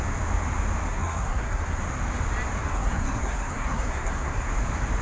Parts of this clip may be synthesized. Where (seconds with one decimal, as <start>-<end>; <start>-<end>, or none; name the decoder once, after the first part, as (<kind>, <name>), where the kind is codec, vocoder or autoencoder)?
0.9-1.8 (codec, SNAC); 2.6-4.5